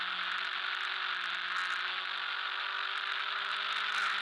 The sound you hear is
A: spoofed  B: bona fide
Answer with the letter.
B